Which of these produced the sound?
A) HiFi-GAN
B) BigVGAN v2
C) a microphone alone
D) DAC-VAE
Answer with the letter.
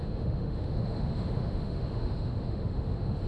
D